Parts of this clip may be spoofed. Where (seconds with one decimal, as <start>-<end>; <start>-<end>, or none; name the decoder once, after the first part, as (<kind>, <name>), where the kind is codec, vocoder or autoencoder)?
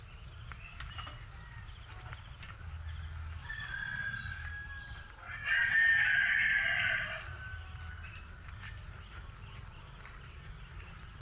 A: none